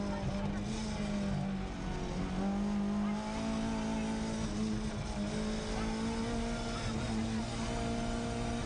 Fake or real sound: real